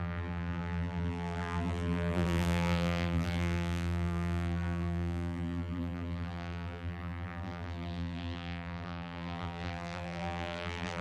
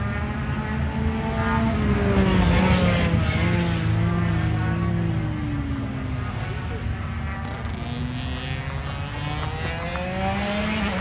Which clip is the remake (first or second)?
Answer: first